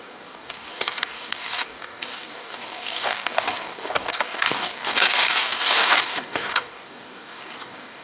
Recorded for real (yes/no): no